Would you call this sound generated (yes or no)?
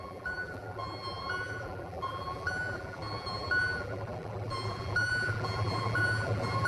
yes